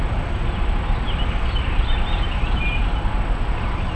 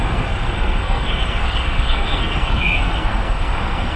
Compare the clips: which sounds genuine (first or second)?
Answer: first